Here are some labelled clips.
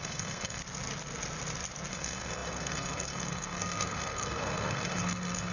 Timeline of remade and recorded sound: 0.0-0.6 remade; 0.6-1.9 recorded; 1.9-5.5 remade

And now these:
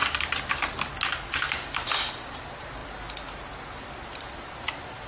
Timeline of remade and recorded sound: 0.0-5.1 recorded

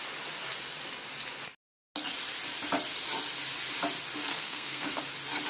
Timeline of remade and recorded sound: 0.0-4.3 recorded; 4.3-5.0 remade; 5.0-5.5 recorded

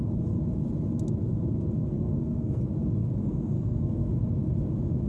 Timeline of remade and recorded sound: 0.0-1.8 recorded; 1.8-2.6 remade; 2.6-3.2 recorded; 3.2-4.1 remade; 4.1-5.1 recorded

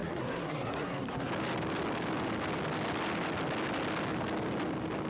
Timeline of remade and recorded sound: 0.0-1.3 remade; 1.3-5.1 recorded

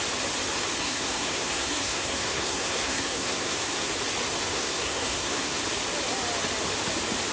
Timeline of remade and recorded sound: 0.0-0.8 recorded; 0.8-3.9 remade; 3.9-4.5 recorded; 4.5-5.6 remade; 5.6-7.3 recorded